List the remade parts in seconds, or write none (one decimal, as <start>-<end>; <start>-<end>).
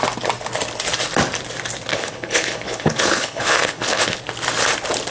1.9-4.2